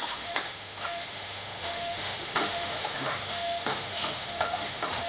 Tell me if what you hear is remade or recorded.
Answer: remade